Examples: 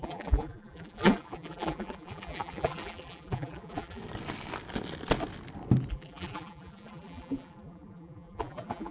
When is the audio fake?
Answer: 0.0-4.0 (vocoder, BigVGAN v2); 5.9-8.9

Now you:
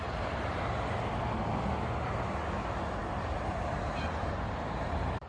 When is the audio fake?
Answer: 3.0-5.3 (vocoder, BigVGAN v2)

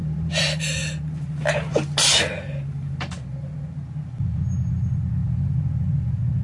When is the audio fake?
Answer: 0.0-0.8 (vocoder, BigVGAN v2)

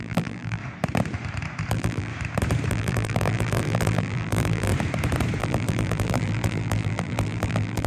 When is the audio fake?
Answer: 0.0-0.6 (vocoder, BigVGAN v2); 1.7-2.1; 2.7-4.7; 5.4-7.9